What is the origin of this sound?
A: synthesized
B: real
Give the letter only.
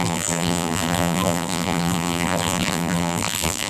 A